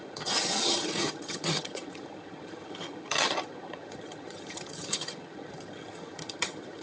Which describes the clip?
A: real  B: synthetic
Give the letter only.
B